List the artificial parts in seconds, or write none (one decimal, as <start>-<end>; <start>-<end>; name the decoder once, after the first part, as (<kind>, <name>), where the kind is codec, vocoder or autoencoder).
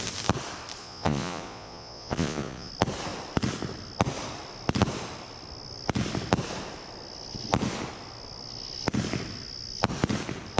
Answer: 0.8-2.7 (vocoder, Vocos)